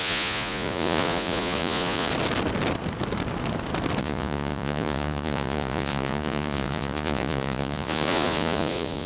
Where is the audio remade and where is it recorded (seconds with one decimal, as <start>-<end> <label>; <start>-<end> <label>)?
0.0-2.1 remade; 2.1-4.0 recorded; 4.0-9.1 remade

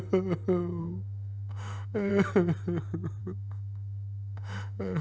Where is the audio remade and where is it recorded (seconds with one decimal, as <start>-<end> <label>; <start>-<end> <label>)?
0.0-0.8 recorded; 0.8-2.1 remade; 2.1-3.2 recorded; 3.2-5.0 remade

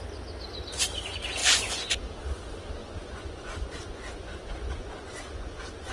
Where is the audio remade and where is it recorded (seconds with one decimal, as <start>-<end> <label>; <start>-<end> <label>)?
0.0-1.4 recorded; 1.4-1.9 remade; 1.9-2.8 recorded; 2.8-5.9 remade

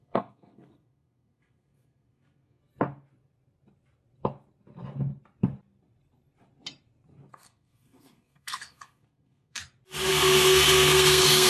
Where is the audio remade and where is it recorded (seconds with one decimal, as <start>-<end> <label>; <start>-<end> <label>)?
0.0-2.6 remade; 2.6-7.3 recorded; 7.3-9.6 remade; 9.6-10.1 recorded; 10.1-11.5 remade

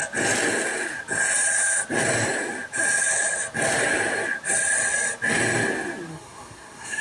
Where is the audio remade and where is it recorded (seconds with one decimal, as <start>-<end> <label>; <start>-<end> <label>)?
0.0-6.1 recorded; 6.1-7.0 remade